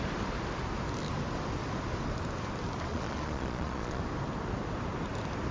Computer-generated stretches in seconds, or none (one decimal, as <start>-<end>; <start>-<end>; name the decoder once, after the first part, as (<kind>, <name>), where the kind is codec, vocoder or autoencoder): 2.9-4.0 (vocoder, Vocos)